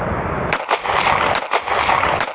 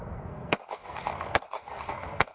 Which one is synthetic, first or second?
second